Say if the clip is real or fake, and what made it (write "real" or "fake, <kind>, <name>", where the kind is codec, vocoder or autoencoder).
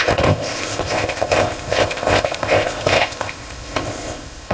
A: fake, codec, ZipCodec